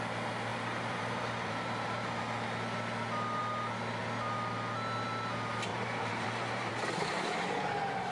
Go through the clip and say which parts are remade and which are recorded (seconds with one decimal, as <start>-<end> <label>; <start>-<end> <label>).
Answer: 0.0-0.5 recorded; 0.5-2.2 remade; 2.2-5.7 recorded; 5.7-8.1 remade